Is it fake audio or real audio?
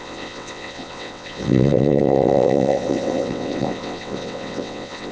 fake